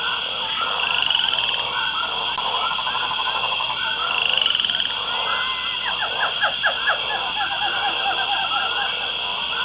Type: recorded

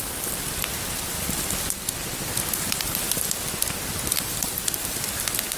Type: recorded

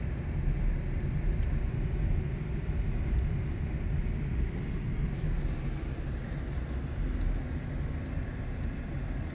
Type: recorded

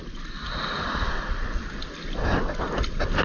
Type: recorded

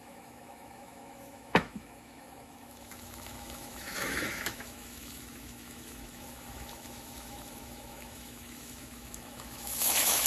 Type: remade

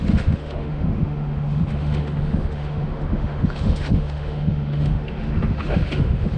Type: remade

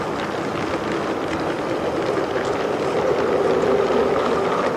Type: recorded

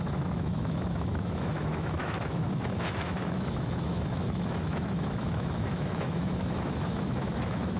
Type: remade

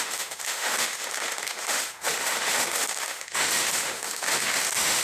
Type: remade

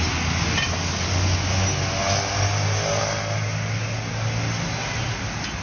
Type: recorded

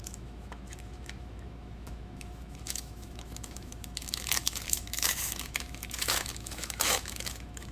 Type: remade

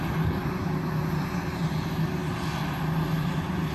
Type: recorded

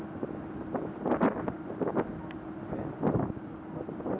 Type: recorded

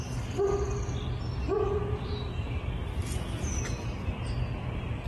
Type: recorded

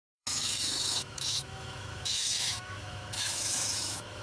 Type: remade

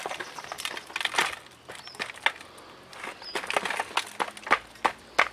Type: recorded